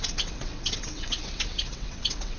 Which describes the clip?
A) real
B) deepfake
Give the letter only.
B